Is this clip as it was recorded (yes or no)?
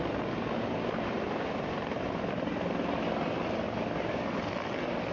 yes